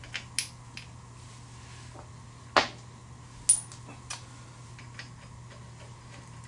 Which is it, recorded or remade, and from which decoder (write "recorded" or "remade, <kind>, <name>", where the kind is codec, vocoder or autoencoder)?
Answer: recorded